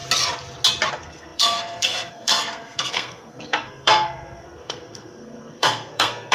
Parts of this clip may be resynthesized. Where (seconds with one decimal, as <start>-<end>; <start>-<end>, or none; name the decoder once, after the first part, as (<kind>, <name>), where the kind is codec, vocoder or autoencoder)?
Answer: 0.9-6.3 (codec, SNAC)